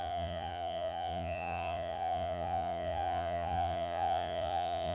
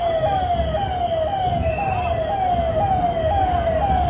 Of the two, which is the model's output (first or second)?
first